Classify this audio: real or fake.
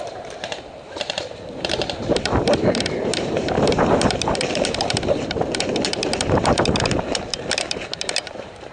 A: fake